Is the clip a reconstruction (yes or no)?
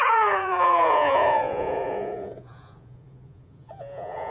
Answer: yes